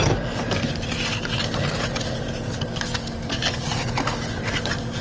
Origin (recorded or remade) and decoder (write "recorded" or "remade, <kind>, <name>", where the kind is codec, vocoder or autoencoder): recorded